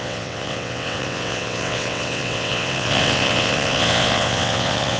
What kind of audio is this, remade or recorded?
remade